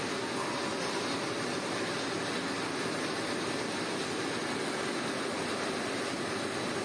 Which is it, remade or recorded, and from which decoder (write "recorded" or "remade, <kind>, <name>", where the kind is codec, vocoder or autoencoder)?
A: recorded